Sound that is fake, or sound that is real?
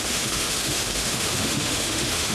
fake